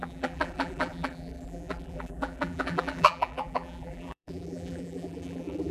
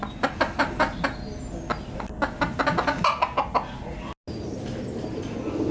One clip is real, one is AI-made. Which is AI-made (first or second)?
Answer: first